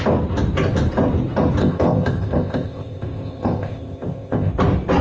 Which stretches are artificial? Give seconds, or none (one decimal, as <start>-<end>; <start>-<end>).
1.6-4.5

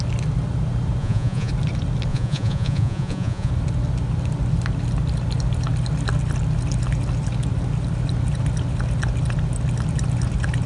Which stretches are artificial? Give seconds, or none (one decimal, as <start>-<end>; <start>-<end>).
1.0-1.5; 2.1-3.5

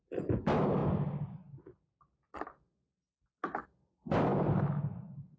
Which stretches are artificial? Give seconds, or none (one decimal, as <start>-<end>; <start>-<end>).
0.0-0.8; 1.3-2.3; 3.6-4.3; 4.9-5.4

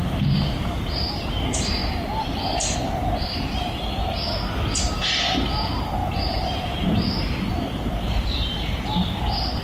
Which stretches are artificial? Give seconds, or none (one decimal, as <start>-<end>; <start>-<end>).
0.0-1.8; 4.8-9.6

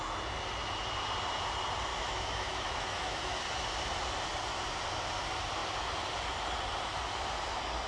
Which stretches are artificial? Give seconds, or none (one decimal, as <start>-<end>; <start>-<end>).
1.9-3.4

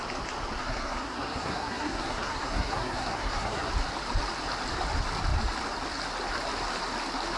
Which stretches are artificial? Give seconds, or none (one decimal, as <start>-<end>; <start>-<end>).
0.6-3.7

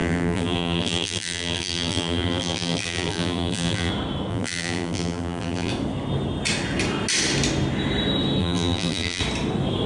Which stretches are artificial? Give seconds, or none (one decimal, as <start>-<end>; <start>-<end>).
0.0-3.9; 4.3-5.7; 8.4-9.2